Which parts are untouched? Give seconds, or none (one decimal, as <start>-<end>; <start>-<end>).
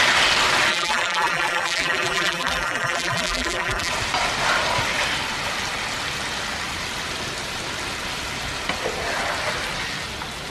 0.0-0.7; 3.9-10.5